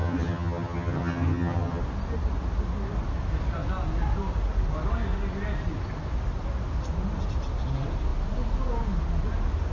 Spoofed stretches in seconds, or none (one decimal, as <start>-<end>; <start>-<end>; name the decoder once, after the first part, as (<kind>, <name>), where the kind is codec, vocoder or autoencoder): 0.0-1.8 (vocoder, HiFi-GAN)